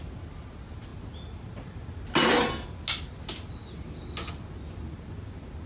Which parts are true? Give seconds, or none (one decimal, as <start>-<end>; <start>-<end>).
0.0-5.7